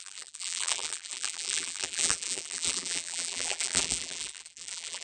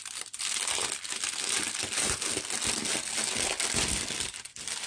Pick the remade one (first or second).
first